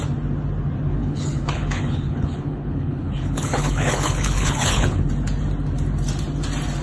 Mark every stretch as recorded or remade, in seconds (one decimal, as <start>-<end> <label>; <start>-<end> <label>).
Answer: 0.0-1.0 recorded; 1.0-5.1 remade; 5.1-6.8 recorded